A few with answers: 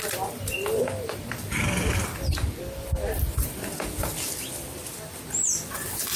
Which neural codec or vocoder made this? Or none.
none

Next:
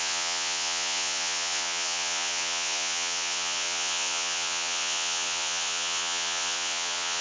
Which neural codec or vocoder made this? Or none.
vocoder, Vocos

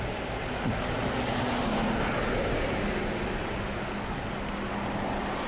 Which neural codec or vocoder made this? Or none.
none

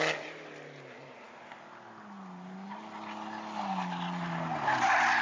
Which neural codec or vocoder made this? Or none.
none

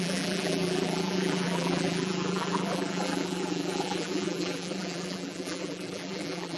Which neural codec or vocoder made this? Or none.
vocoder, BigVGAN v2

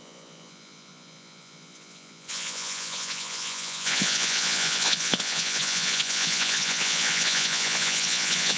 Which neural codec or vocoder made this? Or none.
vocoder, Vocos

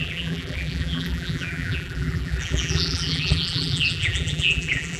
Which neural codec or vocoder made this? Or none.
vocoder, BigVGAN v2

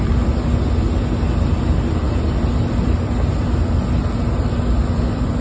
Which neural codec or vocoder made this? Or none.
none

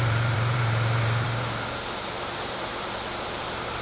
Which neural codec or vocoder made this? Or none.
vocoder, BigVGAN v2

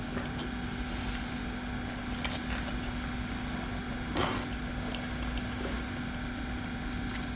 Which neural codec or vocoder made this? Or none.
none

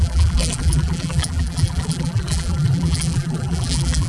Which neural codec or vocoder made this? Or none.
vocoder, BigVGAN v2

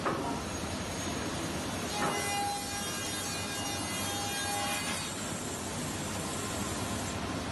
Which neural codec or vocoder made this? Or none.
none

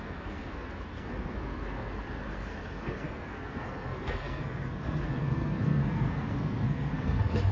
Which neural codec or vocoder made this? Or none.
codec, SNAC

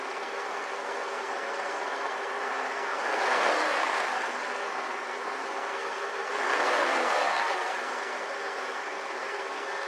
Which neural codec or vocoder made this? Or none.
codec, SNAC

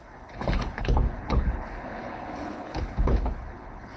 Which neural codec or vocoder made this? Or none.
codec, HILCodec